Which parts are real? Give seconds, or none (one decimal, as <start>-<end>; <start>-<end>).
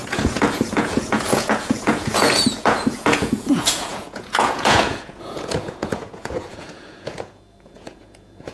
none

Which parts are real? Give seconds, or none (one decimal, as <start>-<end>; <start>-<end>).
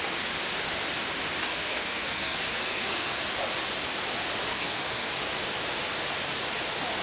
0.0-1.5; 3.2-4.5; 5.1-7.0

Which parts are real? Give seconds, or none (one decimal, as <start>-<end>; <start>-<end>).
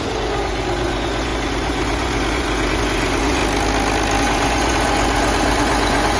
3.4-4.2